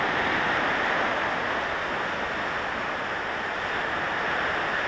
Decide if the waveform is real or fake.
real